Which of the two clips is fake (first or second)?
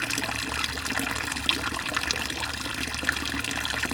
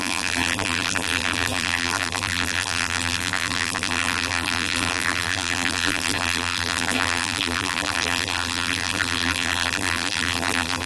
second